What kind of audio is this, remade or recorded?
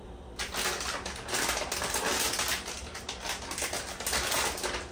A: recorded